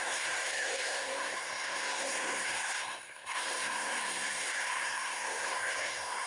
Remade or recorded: remade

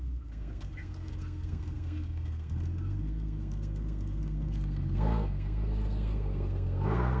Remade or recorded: remade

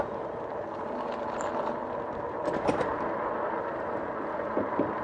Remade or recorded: recorded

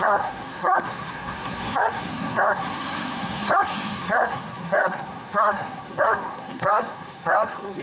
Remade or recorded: remade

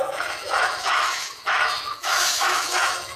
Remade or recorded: remade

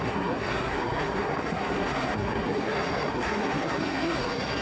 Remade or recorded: remade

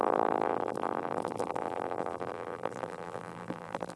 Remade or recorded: remade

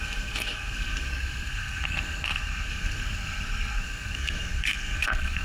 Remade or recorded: remade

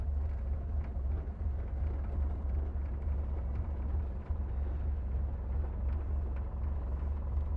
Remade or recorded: recorded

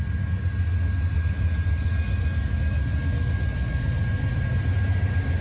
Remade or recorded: recorded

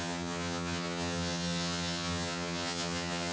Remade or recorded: remade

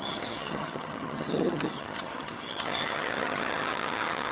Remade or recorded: remade